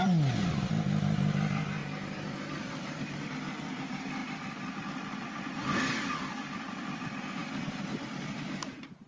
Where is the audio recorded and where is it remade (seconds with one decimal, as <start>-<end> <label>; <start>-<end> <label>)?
0.0-9.1 recorded